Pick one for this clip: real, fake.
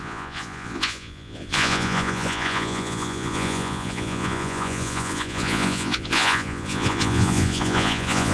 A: fake